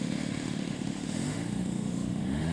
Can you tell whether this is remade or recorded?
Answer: remade